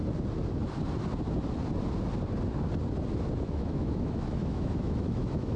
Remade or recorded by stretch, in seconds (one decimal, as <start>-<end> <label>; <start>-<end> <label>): 0.0-3.4 recorded; 3.4-5.6 remade